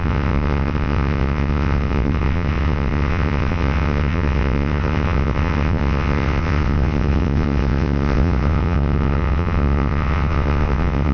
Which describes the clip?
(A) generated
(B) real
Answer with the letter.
A